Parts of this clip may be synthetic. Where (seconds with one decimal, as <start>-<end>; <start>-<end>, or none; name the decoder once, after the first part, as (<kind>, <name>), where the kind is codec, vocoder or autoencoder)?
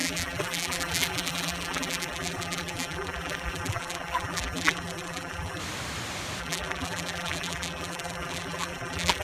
0.0-5.6 (vocoder, BigVGAN v2); 6.4-9.2